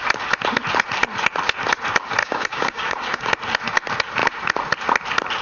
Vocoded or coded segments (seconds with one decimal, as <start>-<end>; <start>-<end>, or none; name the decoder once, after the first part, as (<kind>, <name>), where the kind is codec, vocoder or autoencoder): 2.2-3.3 (codec, DAC)